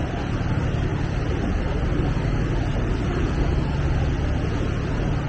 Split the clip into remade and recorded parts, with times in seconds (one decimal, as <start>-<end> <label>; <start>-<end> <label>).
0.0-0.9 recorded; 0.9-1.6 remade; 1.6-2.7 recorded; 2.7-3.5 remade; 3.5-5.3 recorded